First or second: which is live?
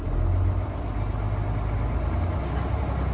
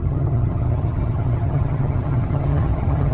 first